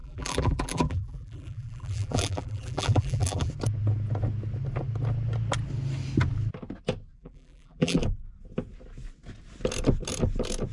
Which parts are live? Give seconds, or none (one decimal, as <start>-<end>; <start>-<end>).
3.5-7.1; 8.0-10.7